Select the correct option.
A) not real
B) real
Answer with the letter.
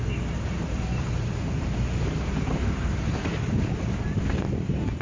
A